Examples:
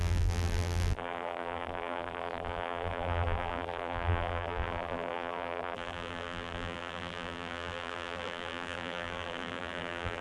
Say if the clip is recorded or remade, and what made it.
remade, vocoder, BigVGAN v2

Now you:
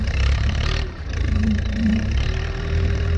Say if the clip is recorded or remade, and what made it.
remade, vocoder, BigVGAN v2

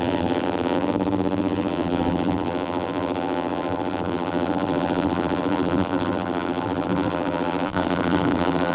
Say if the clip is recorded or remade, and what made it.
remade, vocoder, BigVGAN v2